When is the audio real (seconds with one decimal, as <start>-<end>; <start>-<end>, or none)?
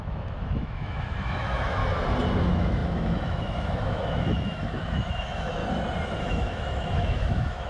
1.8-2.4; 5.6-6.2